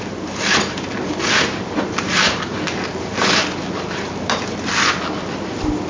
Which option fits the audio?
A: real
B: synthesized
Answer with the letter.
B